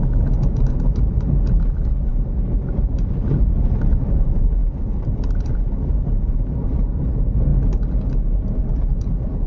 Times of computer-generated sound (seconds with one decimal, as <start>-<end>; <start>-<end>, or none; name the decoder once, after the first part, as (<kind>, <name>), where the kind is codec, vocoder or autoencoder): 0.0-9.5 (vocoder, BigVGAN v2)